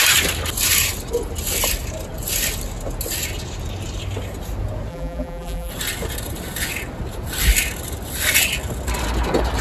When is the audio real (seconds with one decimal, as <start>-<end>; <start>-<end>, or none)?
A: 0.0-4.9; 5.7-9.6